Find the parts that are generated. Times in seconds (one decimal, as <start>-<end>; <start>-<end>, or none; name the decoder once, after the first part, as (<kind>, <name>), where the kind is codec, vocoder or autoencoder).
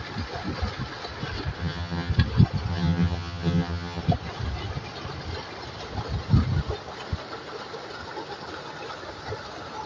1.6-2.1 (vocoder, HiFi-GAN); 2.7-4.0